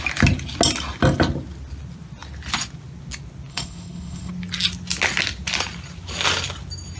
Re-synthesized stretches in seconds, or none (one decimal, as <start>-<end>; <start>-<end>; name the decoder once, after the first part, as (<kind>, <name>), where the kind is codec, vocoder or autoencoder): 3.5-4.3 (codec, HILCodec)